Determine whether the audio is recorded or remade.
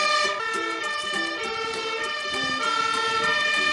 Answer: remade